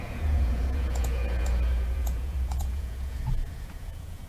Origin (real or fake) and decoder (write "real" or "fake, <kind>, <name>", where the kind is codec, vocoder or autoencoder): fake, vocoder, Vocos